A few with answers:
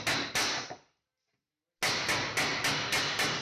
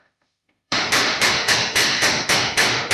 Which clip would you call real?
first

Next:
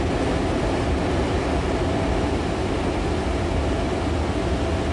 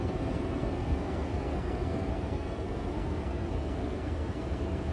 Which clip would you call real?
first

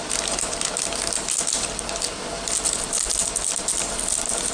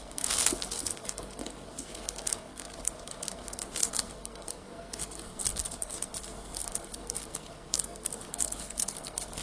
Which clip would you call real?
first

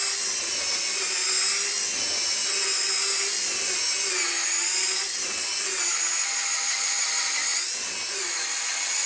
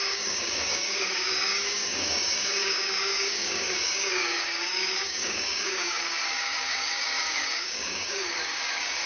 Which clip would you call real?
first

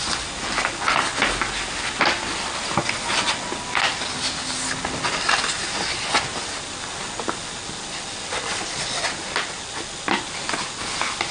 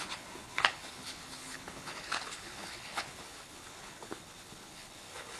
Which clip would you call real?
first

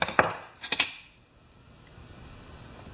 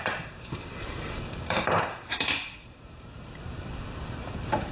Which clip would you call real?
first